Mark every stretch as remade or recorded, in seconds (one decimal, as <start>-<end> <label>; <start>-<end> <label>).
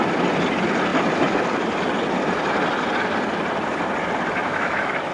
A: 0.0-4.4 recorded; 4.4-5.1 remade